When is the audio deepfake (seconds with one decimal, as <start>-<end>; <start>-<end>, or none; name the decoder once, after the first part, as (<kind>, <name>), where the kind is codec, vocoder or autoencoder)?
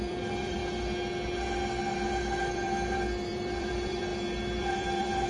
0.0-0.6 (vocoder, BigVGAN v2); 2.5-5.3